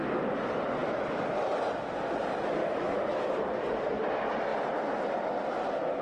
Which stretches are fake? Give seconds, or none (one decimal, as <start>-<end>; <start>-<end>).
2.6-3.3